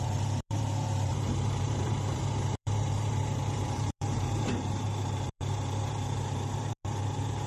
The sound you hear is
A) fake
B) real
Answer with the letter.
A